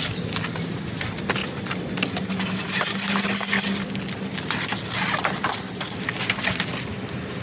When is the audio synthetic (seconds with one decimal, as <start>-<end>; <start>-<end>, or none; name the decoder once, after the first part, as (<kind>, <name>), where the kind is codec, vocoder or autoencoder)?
none